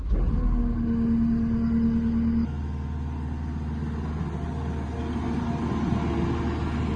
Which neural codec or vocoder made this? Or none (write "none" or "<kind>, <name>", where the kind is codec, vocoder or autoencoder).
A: none